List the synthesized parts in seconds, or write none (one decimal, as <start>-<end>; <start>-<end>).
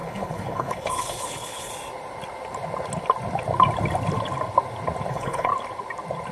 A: 0.0-1.7; 5.1-5.5